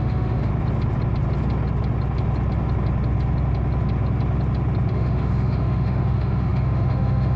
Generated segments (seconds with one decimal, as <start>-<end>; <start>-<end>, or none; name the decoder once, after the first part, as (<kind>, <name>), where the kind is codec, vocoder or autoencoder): 0.0-0.5 (autoencoder, DAC-VAE); 4.9-7.4